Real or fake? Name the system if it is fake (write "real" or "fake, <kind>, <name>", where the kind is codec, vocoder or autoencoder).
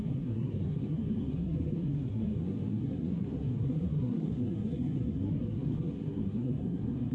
fake, codec, SNAC